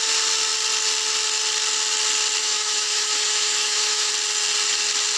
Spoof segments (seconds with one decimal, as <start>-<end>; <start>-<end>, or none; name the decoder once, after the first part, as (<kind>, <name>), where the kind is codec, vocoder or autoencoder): 2.4-4.1 (autoencoder, DAC-VAE)